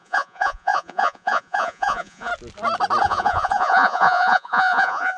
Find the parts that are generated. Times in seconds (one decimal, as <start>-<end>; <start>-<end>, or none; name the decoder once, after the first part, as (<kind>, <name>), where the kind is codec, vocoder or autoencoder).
0.0-2.3 (vocoder, Vocos); 3.0-5.2